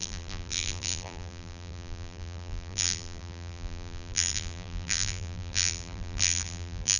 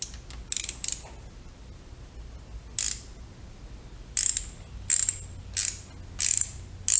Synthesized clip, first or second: first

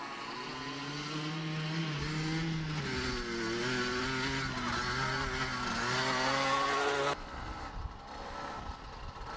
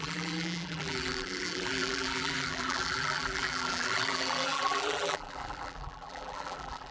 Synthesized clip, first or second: second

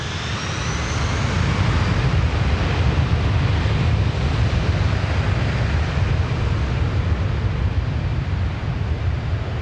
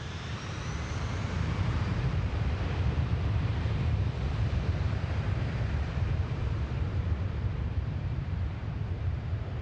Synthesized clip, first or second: second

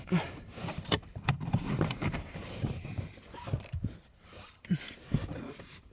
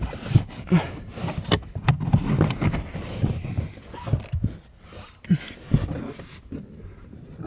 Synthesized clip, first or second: first